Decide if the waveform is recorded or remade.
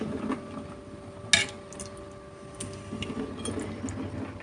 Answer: recorded